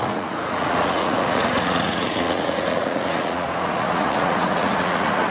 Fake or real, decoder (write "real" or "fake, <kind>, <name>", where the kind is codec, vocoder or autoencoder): fake, vocoder, Vocos